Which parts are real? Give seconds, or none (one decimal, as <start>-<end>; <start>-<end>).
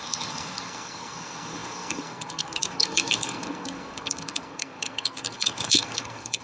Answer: none